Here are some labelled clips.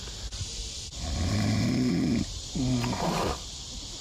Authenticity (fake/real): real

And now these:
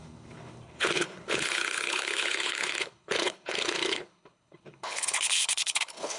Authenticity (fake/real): fake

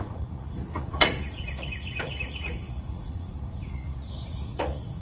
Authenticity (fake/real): fake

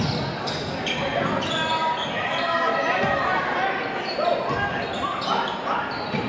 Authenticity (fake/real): real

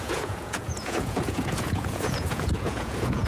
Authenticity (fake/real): fake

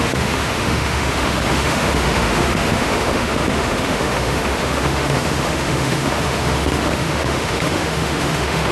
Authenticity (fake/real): fake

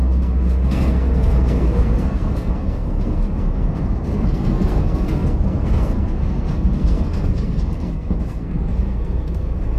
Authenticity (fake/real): fake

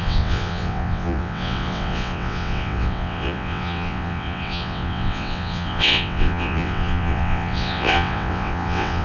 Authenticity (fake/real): fake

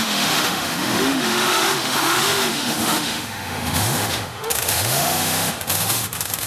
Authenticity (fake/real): fake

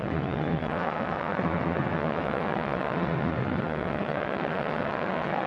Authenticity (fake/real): fake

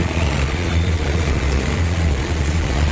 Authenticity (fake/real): fake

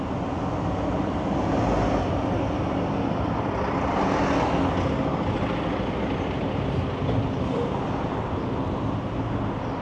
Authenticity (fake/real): real